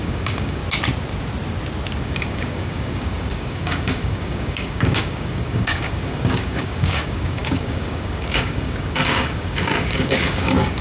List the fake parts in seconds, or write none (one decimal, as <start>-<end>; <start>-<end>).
0.0-0.6; 2.0-10.8